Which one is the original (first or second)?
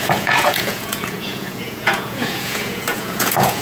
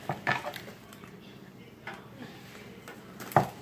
second